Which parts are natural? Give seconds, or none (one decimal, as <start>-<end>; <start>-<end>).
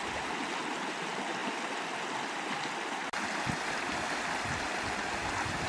0.0-5.7